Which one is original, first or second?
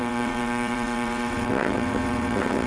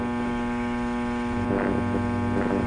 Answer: second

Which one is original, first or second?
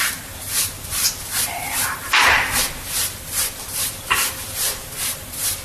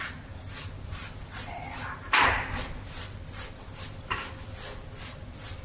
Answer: second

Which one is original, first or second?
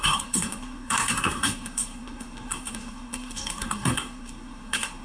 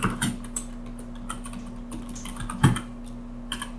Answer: second